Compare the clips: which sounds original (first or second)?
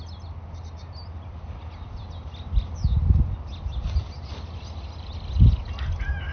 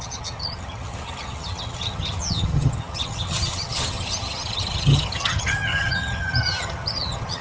first